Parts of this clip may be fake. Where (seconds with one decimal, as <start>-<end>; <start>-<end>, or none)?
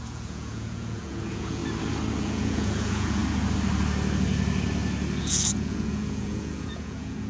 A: 0.0-1.6; 2.2-3.2; 5.2-7.3